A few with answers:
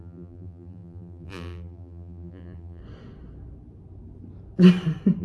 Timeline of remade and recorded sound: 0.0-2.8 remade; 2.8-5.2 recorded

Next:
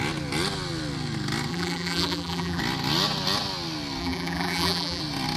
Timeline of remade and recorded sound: 0.0-1.5 recorded; 1.5-2.6 remade; 2.6-4.0 recorded; 4.0-5.0 remade; 5.0-5.4 recorded

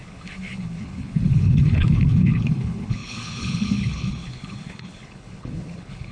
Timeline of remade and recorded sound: 0.0-6.1 remade